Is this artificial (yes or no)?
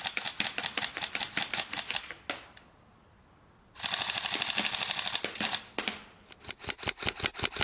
no